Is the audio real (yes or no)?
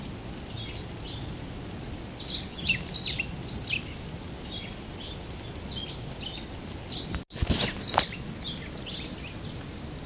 yes